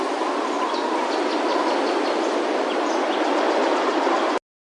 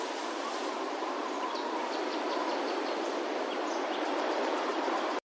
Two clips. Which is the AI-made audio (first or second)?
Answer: second